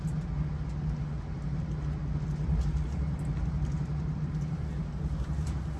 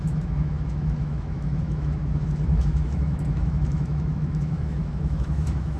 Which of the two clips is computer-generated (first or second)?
second